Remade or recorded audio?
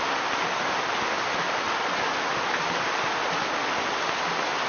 recorded